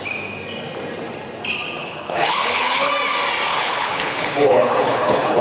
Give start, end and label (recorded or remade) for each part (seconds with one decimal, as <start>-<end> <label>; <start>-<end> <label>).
0.0-1.8 recorded; 1.8-2.9 remade; 2.9-3.5 recorded; 3.5-5.4 remade